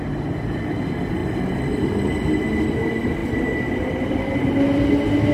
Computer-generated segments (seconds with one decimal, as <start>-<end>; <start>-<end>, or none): none